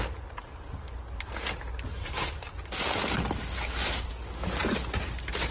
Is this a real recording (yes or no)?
yes